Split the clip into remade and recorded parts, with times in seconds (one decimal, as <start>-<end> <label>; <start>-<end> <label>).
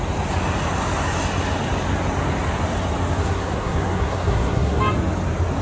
0.0-3.2 recorded; 3.2-4.8 remade; 4.8-5.6 recorded